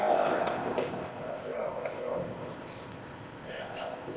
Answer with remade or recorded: remade